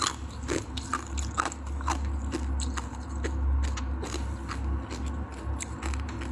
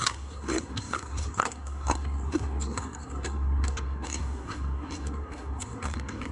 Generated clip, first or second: second